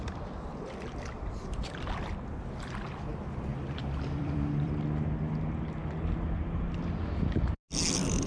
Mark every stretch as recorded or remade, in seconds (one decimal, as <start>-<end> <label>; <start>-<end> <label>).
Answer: 0.0-3.5 recorded; 3.5-4.8 remade; 4.8-8.3 recorded